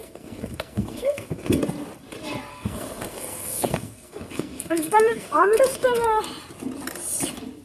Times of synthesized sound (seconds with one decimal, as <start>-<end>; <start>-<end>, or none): 0.0-1.6; 2.5-6.2